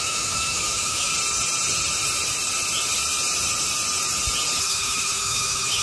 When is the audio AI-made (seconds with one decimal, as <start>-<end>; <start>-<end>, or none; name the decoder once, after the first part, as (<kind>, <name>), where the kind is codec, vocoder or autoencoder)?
0.0-1.1 (autoencoder, DAC-VAE); 4.6-5.8